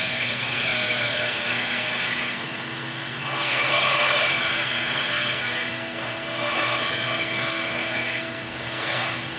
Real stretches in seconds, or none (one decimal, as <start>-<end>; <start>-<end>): none